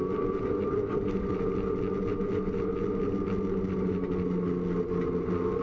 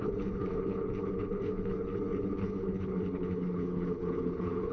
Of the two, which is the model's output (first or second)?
second